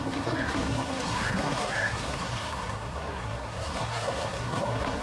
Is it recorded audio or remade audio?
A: remade